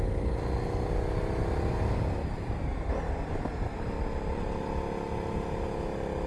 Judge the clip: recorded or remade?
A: recorded